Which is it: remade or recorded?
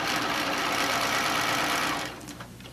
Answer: recorded